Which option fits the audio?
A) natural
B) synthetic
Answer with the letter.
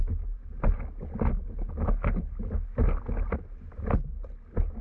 A